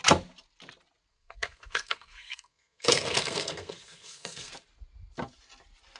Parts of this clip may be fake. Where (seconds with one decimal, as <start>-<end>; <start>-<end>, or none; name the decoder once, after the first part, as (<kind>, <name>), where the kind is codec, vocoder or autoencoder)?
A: 1.1-4.5 (codec, SNAC)